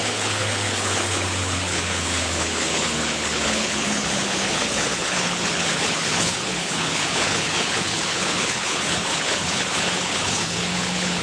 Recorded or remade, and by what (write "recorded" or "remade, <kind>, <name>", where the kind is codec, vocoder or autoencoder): remade, codec, HILCodec